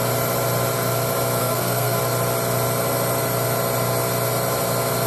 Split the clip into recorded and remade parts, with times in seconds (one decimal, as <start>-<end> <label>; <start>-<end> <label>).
0.0-1.4 recorded; 1.4-2.0 remade; 2.0-5.1 recorded